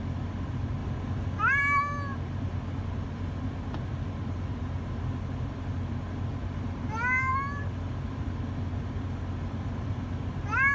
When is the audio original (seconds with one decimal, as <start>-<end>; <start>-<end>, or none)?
0.0-0.8; 1.4-10.7